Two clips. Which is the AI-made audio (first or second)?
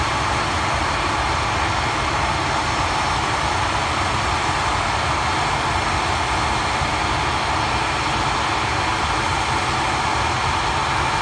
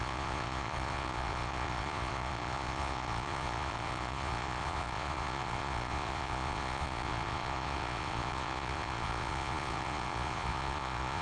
second